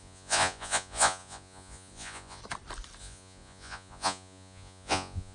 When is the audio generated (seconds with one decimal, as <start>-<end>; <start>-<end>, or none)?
0.0-2.4; 3.0-5.3